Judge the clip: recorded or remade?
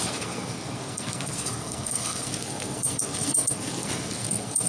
remade